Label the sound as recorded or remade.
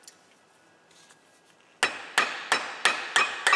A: recorded